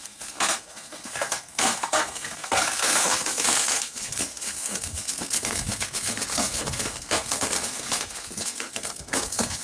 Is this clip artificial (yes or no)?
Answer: yes